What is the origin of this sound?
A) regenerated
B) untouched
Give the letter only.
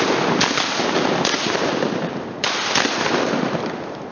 B